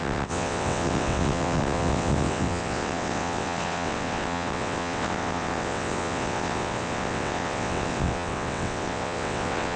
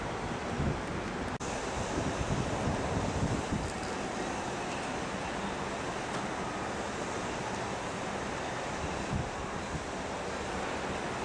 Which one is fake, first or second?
first